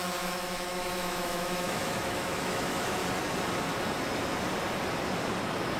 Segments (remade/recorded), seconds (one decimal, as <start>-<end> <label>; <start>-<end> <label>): 0.0-3.0 remade; 3.0-5.8 recorded